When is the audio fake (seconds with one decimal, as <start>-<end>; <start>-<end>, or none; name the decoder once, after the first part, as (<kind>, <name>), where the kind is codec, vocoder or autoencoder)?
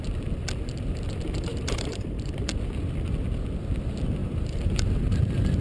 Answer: 1.5-2.5 (vocoder, BigVGAN v2); 4.2-5.6